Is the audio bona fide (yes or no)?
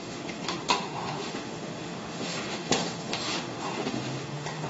no